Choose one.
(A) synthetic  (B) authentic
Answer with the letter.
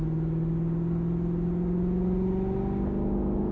B